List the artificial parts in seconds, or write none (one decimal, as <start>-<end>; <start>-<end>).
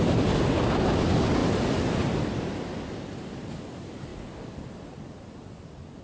none